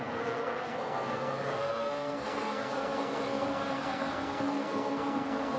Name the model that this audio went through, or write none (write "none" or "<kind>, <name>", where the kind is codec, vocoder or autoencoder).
codec, SNAC